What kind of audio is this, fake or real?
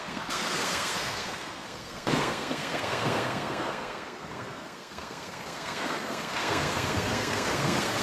fake